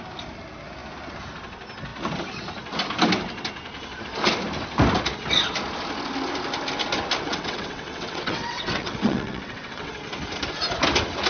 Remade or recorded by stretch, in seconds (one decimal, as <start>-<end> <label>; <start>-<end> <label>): 0.0-7.3 recorded; 7.3-9.9 remade; 9.9-11.3 recorded